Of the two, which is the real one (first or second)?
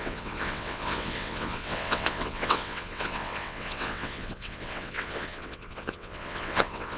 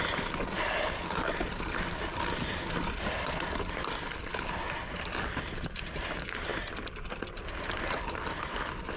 second